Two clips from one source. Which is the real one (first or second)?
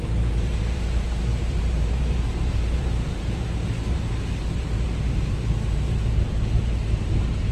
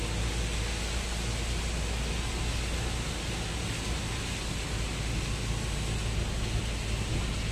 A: second